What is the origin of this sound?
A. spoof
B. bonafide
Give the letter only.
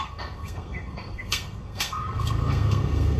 A